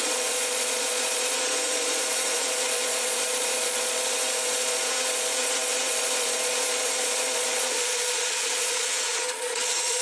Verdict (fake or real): fake